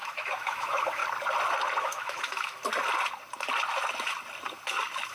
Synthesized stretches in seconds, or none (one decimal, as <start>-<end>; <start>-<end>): 0.0-1.0; 1.8-2.6